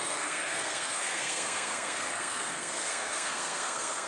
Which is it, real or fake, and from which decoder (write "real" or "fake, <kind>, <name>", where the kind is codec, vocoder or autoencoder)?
fake, codec, SNAC